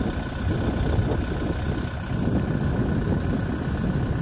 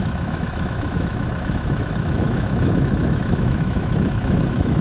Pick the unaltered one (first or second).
first